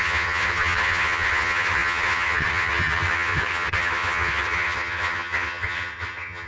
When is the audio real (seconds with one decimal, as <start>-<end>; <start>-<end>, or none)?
none